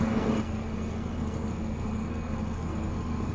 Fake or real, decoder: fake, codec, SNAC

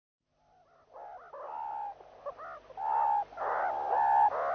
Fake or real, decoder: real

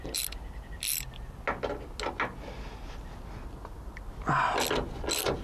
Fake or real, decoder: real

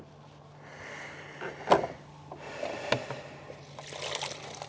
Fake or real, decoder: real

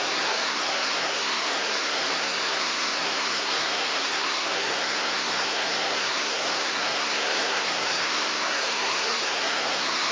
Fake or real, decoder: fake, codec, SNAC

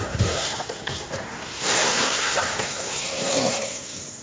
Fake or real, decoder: fake, codec, SNAC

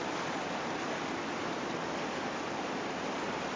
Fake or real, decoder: real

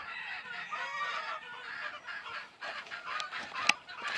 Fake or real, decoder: real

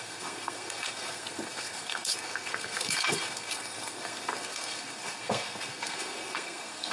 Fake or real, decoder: fake, codec, SNAC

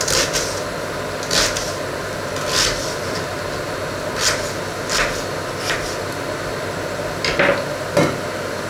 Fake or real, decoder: real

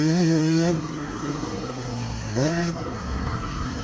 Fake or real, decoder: fake, codec, SNAC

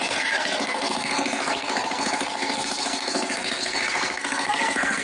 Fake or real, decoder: fake, codec, SNAC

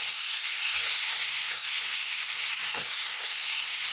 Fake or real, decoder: fake, codec, SNAC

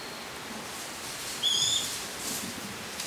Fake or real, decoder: real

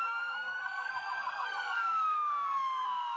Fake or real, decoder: fake, codec, SNAC